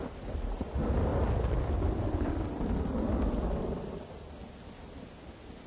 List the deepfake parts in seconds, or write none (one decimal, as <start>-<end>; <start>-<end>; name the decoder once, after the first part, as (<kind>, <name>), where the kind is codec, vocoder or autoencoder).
none